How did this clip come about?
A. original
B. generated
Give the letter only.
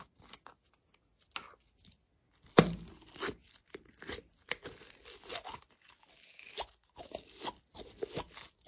A